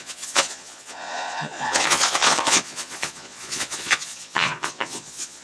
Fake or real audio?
fake